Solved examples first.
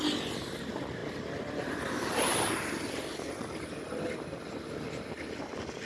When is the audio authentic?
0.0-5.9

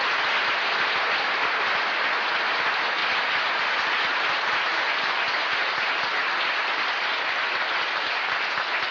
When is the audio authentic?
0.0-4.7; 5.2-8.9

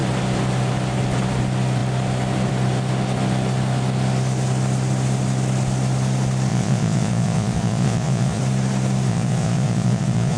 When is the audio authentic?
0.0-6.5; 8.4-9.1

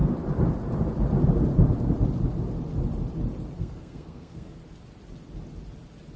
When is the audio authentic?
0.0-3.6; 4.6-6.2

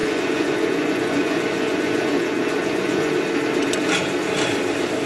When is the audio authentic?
3.1-5.1

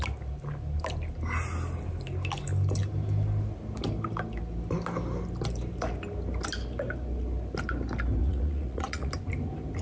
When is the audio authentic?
0.0-8.2; 9.1-9.8

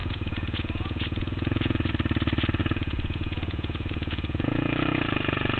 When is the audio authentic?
1.9-2.6